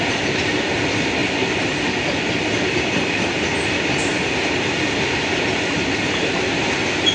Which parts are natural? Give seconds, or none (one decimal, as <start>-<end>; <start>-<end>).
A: 0.0-7.1